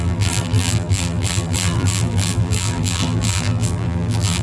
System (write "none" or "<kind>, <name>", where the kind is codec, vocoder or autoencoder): vocoder, BigVGAN v2